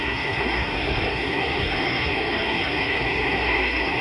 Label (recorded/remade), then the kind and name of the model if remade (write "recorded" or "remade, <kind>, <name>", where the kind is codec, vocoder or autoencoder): remade, codec, SNAC